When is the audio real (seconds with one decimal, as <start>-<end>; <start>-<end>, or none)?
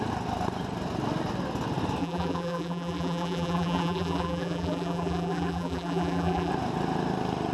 0.0-2.0; 6.5-7.5